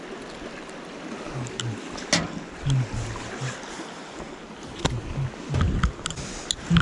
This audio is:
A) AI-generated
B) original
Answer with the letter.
B